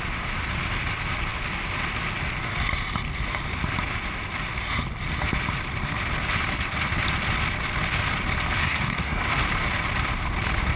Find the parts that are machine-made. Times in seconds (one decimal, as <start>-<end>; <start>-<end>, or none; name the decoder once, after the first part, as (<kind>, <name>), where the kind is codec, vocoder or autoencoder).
8.6-9.2 (codec, SNAC)